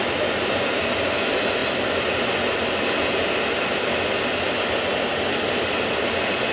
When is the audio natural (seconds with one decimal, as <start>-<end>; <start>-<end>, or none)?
0.0-6.5